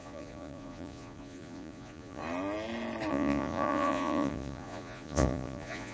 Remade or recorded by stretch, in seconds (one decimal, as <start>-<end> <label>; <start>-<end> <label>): 0.0-2.2 remade; 2.2-3.1 recorded; 3.1-5.9 remade